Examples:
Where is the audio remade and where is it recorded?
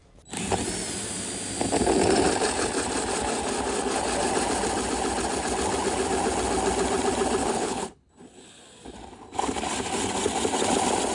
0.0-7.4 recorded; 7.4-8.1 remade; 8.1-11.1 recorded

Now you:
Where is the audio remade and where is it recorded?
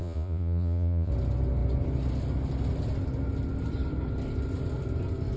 0.0-1.1 remade; 1.1-5.4 recorded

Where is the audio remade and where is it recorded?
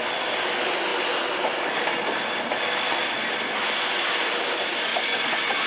0.0-5.7 recorded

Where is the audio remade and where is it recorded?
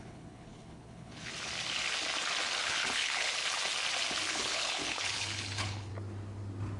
0.0-1.3 remade; 1.3-2.6 recorded; 2.6-3.4 remade; 3.4-4.3 recorded; 4.3-5.9 remade; 5.9-6.8 recorded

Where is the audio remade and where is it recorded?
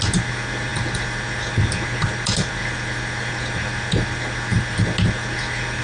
0.0-5.8 recorded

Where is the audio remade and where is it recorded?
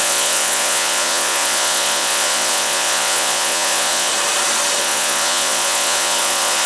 0.0-4.1 remade; 4.1-4.8 recorded; 4.8-6.7 remade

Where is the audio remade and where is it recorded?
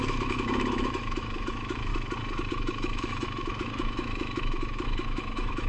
0.0-1.9 remade; 1.9-2.5 recorded; 2.5-5.7 remade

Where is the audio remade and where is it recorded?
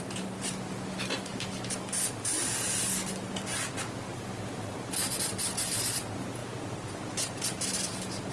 0.0-8.3 recorded